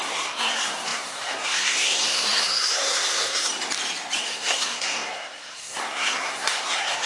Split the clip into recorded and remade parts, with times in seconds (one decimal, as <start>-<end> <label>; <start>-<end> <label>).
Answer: 0.0-3.5 remade; 3.5-4.2 recorded; 4.2-7.1 remade